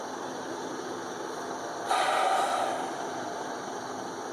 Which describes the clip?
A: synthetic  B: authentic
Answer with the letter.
B